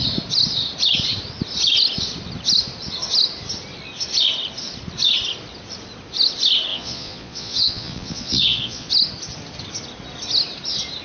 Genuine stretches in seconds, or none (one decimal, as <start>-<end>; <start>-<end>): 0.0-6.7; 8.9-11.0